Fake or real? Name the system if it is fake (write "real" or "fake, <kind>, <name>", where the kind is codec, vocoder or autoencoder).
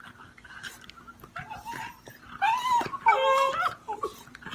real